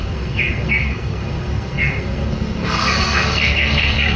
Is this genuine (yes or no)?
no